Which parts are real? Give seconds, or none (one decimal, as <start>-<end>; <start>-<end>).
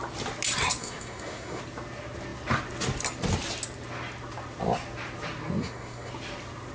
0.0-0.8; 1.6-5.6; 6.1-6.7